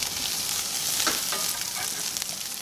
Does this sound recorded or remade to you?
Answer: remade